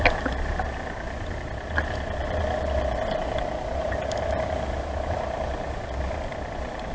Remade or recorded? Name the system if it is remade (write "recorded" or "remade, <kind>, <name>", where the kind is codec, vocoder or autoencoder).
recorded